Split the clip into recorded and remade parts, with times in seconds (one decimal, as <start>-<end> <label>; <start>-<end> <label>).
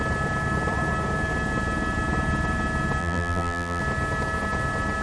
0.0-3.0 recorded; 3.0-3.8 remade; 3.8-5.0 recorded